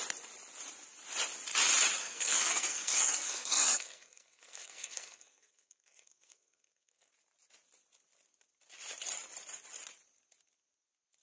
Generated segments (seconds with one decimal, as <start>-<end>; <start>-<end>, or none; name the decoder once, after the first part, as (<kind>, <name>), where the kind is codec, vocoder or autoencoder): 2.0-7.1 (codec, SNAC)